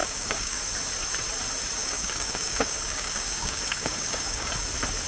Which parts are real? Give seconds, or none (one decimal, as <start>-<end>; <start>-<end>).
0.6-1.8; 4.5-5.1